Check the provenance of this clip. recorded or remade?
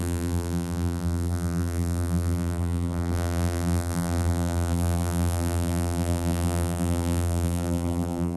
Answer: remade